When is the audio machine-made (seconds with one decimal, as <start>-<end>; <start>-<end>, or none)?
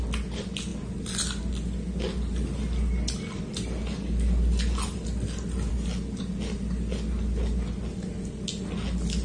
none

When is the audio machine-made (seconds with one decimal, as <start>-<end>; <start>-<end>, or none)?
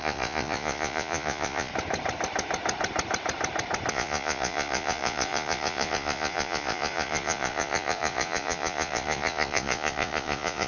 0.0-1.7; 3.9-10.7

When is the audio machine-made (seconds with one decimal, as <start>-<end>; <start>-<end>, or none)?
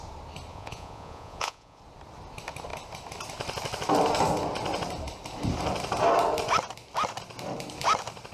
0.5-1.8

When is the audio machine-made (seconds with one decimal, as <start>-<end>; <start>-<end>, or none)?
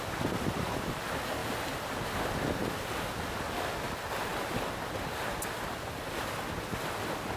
none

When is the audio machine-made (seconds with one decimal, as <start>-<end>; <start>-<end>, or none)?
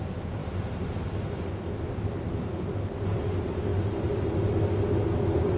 none